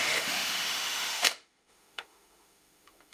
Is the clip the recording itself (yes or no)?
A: no